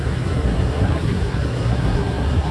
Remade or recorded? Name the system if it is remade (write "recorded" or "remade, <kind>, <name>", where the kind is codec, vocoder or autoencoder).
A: remade, codec, SNAC